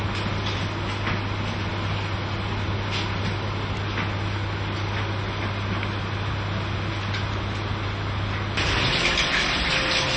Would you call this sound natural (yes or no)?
yes